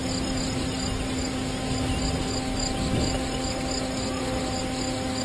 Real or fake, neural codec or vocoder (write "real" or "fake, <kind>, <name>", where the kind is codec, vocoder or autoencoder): real